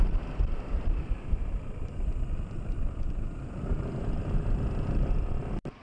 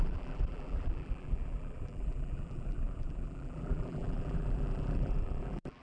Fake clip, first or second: second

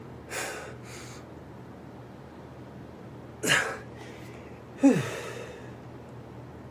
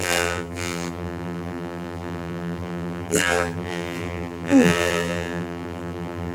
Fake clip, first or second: second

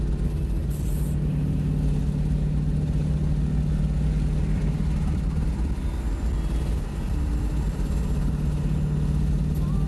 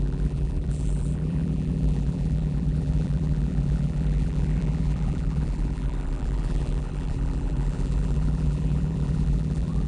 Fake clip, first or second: second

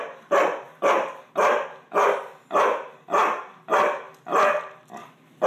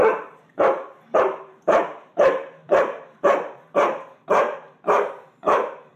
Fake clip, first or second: second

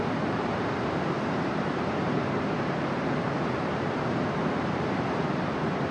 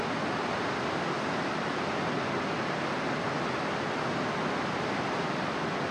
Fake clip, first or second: first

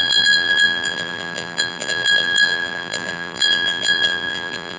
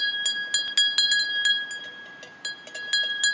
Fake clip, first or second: first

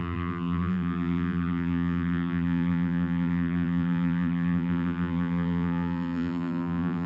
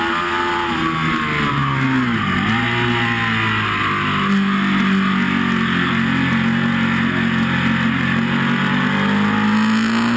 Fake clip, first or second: first